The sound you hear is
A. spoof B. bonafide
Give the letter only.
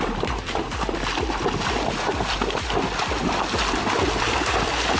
B